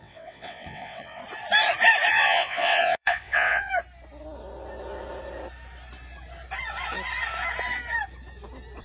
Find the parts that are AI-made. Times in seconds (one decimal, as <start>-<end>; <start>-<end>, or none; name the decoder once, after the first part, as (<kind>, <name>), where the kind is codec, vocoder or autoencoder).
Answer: 0.0-1.2 (vocoder, WaveNeXt); 2.1-3.7